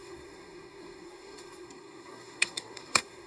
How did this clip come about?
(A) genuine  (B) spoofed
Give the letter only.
B